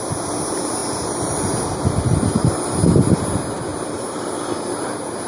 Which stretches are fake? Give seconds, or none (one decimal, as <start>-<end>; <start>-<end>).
0.8-2.8